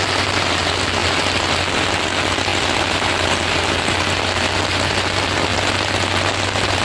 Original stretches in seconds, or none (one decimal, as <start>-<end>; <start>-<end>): 0.0-6.8